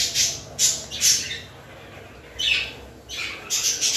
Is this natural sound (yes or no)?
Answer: yes